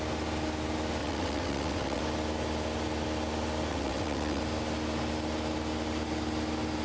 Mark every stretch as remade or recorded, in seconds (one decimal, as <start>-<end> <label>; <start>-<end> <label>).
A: 0.0-1.0 recorded; 1.0-2.0 remade; 2.0-3.7 recorded; 3.7-4.4 remade; 4.4-6.8 recorded